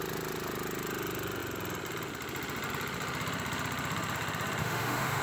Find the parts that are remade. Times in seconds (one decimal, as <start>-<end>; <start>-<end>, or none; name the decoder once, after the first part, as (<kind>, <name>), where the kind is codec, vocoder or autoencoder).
4.6-5.2 (autoencoder, DAC-VAE)